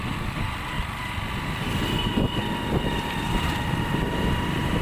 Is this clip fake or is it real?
real